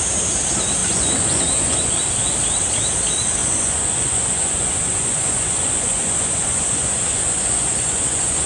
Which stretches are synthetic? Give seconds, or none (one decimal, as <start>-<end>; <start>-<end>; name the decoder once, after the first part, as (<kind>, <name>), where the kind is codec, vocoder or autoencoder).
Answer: 0.8-1.9 (vocoder, Vocos); 3.4-8.5